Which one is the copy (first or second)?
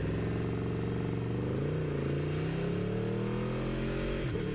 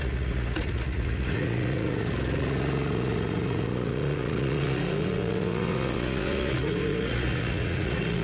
second